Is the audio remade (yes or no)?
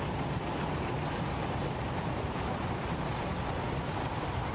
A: no